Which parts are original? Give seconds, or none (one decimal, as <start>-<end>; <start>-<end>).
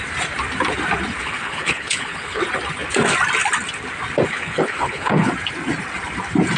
0.0-1.2; 2.4-4.3; 5.3-6.6